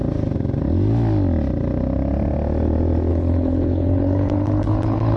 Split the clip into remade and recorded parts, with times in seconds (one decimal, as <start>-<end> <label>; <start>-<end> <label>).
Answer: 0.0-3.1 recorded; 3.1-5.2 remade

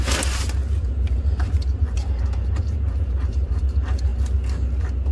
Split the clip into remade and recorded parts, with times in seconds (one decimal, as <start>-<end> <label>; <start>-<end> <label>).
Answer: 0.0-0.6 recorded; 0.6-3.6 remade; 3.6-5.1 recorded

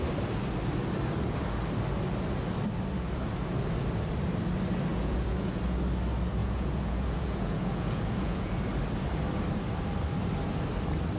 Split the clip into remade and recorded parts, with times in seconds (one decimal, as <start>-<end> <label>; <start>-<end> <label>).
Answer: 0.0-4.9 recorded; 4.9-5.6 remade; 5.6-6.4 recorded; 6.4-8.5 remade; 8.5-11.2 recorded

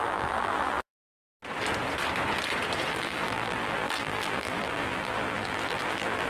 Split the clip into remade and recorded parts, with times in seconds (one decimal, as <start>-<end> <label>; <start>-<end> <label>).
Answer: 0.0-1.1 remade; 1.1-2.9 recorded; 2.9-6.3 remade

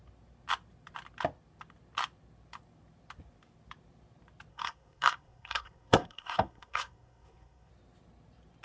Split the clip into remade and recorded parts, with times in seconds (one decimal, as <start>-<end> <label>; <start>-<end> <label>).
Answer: 0.0-4.5 recorded; 4.5-7.7 remade; 7.7-8.6 recorded

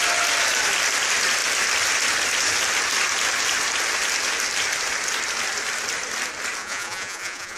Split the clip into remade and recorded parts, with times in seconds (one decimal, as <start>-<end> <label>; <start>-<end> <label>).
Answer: 0.0-6.6 recorded; 6.6-7.6 remade